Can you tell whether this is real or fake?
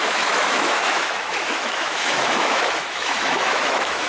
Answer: fake